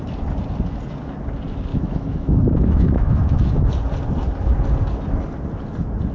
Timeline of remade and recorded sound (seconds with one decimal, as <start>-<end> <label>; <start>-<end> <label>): 0.0-1.7 recorded; 1.7-3.7 remade; 3.7-6.1 recorded